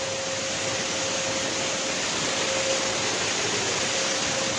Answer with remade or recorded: recorded